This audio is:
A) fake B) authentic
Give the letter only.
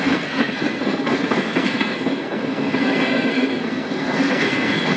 A